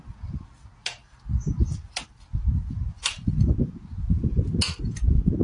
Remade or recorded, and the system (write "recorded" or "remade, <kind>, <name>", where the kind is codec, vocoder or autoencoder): recorded